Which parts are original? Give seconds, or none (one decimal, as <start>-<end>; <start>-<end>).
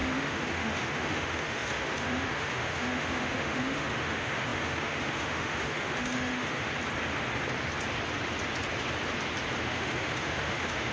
6.7-9.6